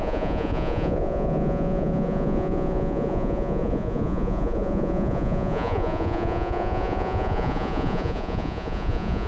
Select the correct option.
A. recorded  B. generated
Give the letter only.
B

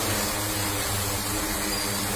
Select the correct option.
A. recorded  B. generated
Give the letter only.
A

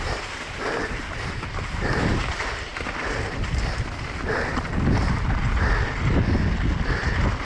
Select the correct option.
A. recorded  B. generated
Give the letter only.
A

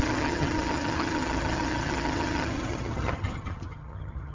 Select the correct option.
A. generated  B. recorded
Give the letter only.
A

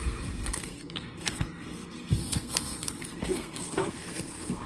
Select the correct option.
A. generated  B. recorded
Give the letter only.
A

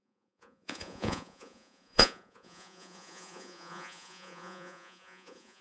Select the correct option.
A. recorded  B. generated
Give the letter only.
B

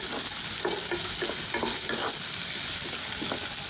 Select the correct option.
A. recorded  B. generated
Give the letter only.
A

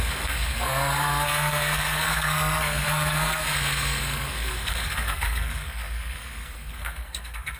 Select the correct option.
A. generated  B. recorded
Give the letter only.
A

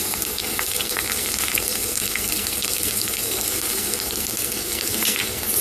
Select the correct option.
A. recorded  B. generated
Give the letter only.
B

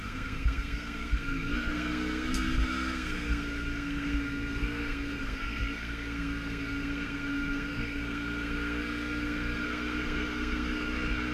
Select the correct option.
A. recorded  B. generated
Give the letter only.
B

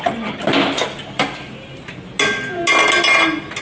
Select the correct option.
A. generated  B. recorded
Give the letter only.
B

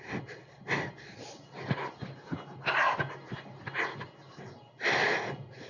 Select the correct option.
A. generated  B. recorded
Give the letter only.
B